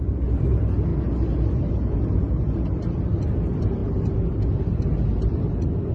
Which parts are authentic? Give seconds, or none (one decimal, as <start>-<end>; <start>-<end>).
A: 0.0-5.9